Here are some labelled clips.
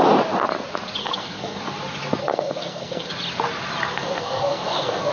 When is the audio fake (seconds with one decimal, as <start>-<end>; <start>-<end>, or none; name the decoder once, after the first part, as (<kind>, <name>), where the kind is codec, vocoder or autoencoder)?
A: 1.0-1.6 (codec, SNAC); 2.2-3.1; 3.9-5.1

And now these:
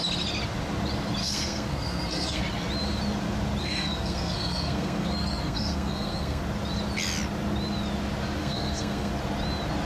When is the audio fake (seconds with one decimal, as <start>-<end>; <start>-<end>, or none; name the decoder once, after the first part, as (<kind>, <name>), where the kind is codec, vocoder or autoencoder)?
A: 1.2-2.4 (codec, SNAC); 3.6-6.4; 8.4-9.1

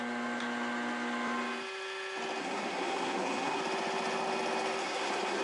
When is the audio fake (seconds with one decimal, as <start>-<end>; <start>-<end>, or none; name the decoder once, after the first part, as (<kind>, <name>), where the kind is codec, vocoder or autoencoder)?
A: 2.4-3.6 (codec, SNAC); 4.8-5.4

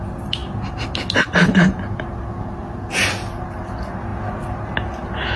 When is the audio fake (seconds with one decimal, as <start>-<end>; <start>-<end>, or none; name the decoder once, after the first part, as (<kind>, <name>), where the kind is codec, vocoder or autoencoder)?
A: none